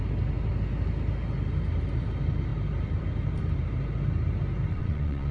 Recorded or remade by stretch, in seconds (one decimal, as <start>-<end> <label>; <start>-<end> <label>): 0.0-4.7 recorded; 4.7-5.3 remade

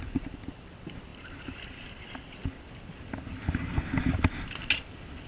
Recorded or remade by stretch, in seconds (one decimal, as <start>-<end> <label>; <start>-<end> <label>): 0.0-5.3 recorded

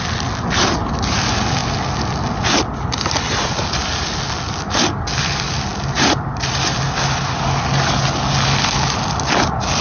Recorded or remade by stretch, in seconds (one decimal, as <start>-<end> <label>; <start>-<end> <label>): 0.0-9.8 recorded

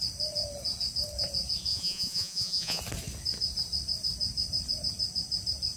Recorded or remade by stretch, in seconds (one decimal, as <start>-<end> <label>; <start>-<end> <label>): 0.0-1.7 recorded; 1.7-2.8 remade; 2.8-5.8 recorded